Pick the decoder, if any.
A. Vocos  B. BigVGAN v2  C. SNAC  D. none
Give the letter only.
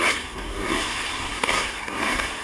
C